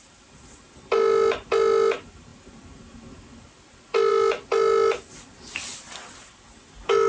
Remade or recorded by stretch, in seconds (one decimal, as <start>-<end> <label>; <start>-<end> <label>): 0.0-7.1 recorded